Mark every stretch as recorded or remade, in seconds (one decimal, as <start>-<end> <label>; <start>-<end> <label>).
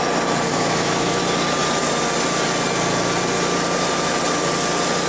0.0-0.5 recorded; 0.5-1.2 remade; 1.2-5.1 recorded